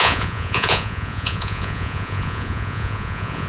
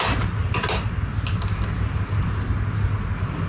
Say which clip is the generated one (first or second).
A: first